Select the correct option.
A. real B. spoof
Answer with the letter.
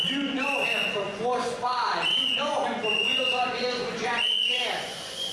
B